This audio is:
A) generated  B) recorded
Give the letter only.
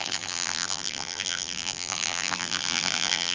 A